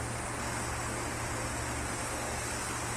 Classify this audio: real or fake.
real